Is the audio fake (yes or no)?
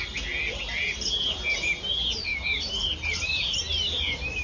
no